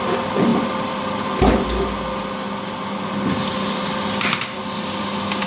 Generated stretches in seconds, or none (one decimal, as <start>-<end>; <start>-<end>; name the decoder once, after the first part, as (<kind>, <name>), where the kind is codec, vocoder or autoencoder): 0.0-0.5 (vocoder, BigVGAN v2); 3.8-5.5